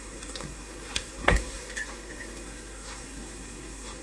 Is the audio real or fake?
fake